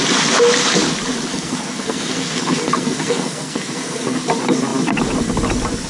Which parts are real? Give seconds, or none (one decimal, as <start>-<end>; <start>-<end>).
0.0-1.3; 4.2-5.9